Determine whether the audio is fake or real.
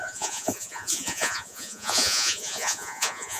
fake